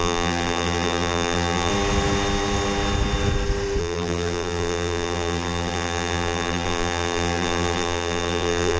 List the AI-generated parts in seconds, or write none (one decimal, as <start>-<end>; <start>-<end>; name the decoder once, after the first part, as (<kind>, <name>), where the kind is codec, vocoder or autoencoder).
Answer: 0.0-1.7 (vocoder, BigVGAN v2); 3.8-8.8